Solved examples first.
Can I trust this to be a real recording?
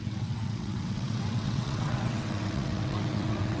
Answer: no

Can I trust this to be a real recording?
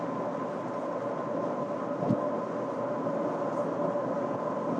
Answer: yes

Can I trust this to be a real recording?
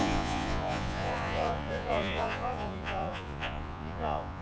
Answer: no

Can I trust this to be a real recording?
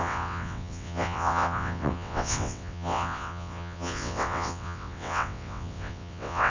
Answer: no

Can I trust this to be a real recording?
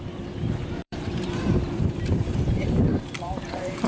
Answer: no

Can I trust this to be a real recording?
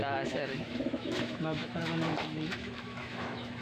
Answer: no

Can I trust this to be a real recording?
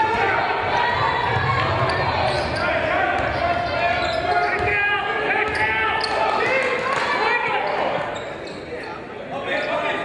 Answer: yes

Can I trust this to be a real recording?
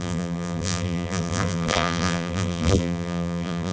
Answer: no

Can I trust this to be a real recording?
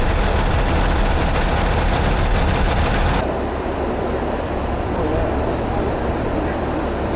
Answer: no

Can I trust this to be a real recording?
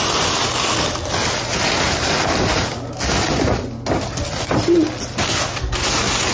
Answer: yes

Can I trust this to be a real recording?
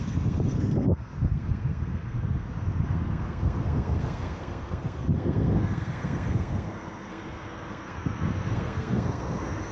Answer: no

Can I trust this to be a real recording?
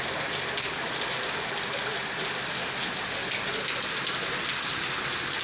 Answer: yes